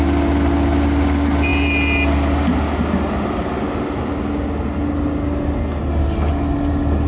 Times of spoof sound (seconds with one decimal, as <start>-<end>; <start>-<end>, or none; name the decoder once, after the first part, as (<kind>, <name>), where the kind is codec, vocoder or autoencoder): none